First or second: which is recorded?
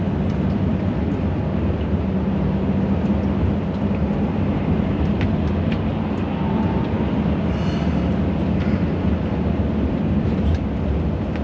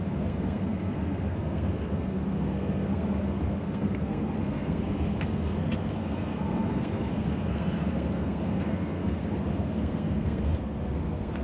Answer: first